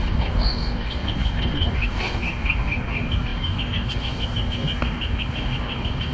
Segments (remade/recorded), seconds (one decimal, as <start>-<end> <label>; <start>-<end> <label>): 0.0-6.1 remade